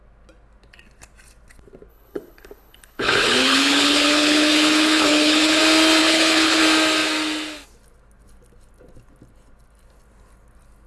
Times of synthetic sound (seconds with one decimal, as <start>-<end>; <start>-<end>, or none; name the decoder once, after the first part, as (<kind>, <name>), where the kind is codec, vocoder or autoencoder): 1.9-5.6 (codec, HILCodec); 6.0-6.6